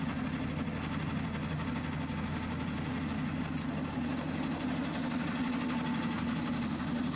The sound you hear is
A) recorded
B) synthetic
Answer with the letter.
A